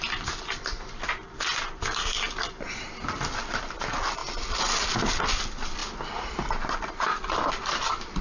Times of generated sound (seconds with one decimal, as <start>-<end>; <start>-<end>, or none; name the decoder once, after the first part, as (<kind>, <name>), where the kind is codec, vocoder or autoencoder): 0.0-4.2 (vocoder, BigVGAN v2); 5.2-5.8; 6.7-8.2